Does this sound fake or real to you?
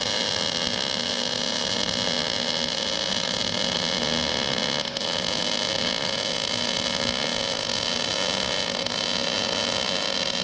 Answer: real